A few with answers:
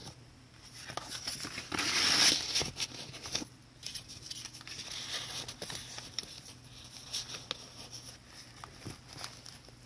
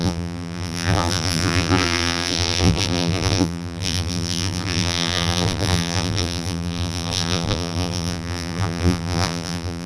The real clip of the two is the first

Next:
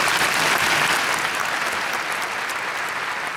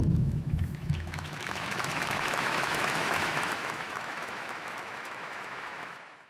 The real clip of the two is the first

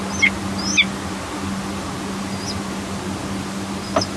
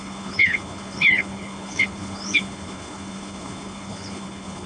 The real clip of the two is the first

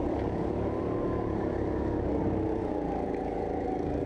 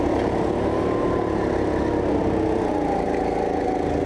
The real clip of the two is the second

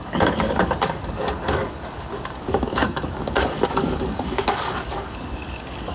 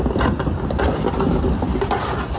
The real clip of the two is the second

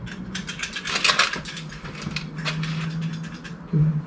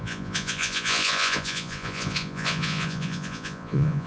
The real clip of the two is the first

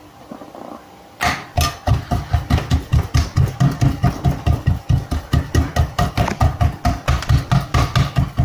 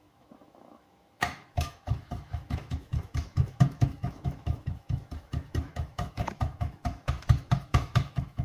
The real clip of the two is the first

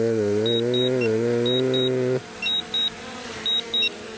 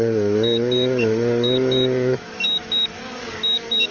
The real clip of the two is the first